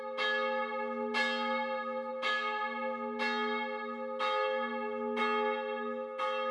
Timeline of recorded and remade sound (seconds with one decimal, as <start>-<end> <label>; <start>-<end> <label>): 0.0-6.5 recorded